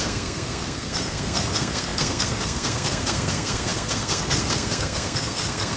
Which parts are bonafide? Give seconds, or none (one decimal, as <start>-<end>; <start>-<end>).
none